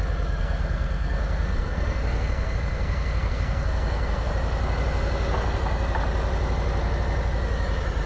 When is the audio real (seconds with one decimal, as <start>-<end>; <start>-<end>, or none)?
0.0-0.4; 4.3-8.1